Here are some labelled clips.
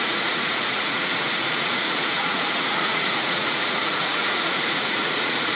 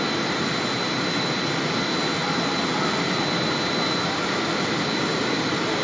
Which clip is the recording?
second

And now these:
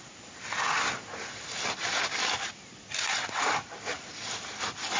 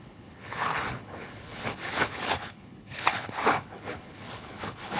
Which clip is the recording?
first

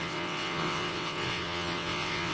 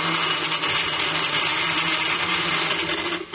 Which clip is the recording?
second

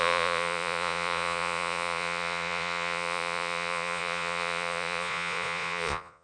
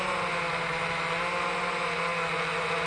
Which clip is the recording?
second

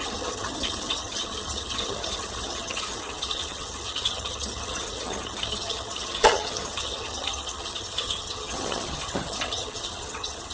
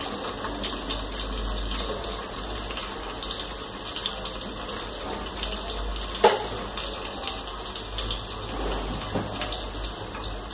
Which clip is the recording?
second